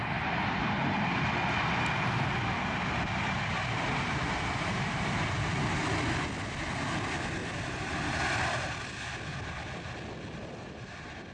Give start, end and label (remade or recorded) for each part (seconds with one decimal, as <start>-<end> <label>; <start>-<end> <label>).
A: 0.0-7.4 recorded; 7.4-8.5 remade; 8.5-11.3 recorded